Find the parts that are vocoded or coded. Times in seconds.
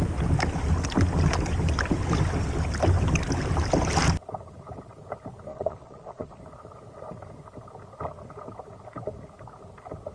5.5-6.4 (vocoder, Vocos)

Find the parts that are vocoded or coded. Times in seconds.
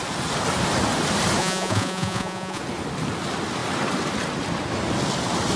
1.4-2.6 (vocoder, Vocos)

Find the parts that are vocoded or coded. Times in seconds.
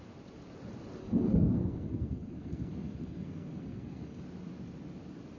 1.0-4.2 (codec, SNAC)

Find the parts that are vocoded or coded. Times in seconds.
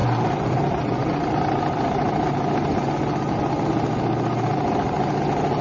none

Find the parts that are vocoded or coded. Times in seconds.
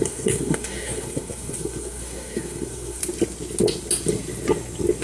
0.0-3.0 (codec, SNAC)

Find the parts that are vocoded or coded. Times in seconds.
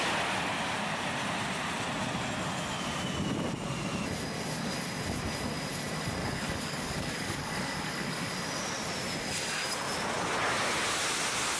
6.2-8.3 (codec, DAC)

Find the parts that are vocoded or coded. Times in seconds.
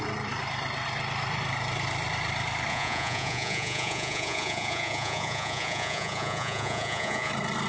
2.7-7.3 (vocoder, Vocos)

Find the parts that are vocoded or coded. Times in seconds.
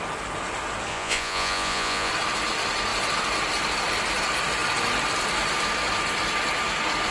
0.9-2.1 (vocoder, Vocos)